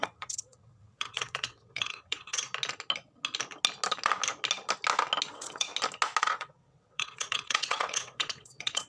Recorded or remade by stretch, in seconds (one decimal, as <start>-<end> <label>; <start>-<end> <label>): 0.0-2.4 remade; 2.4-5.3 recorded; 5.3-5.7 remade; 5.7-6.2 recorded; 6.2-8.9 remade